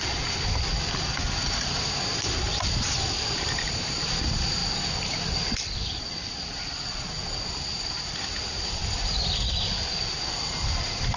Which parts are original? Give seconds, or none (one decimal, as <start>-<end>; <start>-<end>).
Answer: 0.0-11.2